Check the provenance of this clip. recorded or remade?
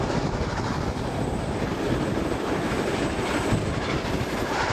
recorded